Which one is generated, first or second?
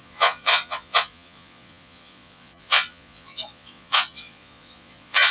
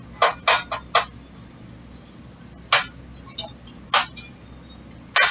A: first